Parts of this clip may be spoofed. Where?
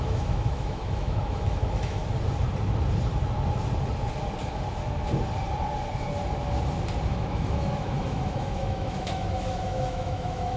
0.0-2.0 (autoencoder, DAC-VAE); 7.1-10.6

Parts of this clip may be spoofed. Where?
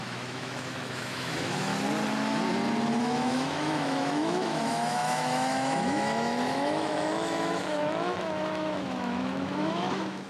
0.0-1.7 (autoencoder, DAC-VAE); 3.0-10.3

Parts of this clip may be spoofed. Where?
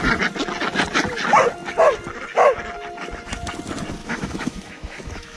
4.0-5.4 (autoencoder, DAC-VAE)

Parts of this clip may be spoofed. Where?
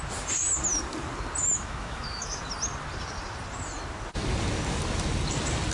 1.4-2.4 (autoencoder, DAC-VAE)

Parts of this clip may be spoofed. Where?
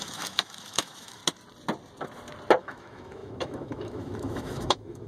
0.0-1.2 (autoencoder, DAC-VAE); 2.6-5.1